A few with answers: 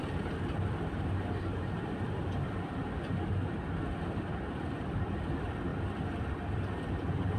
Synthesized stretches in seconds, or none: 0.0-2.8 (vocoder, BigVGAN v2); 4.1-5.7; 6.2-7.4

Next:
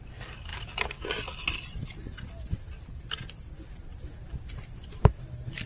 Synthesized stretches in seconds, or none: none

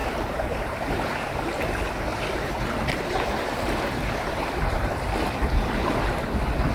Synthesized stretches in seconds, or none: 0.0-1.0 (vocoder, BigVGAN v2); 2.1-5.8

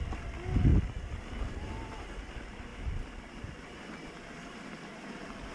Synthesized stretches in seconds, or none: none

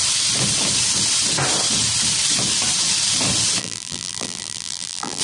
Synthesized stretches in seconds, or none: 3.6-5.2 (vocoder, BigVGAN v2)

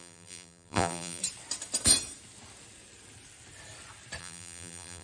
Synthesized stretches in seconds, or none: 0.0-1.2 (vocoder, BigVGAN v2); 4.2-5.0

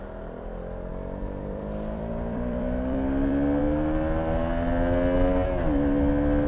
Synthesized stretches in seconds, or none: 0.9-3.6 (vocoder, BigVGAN v2)

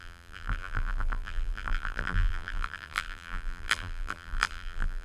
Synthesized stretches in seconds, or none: 0.0-5.0 (vocoder, BigVGAN v2)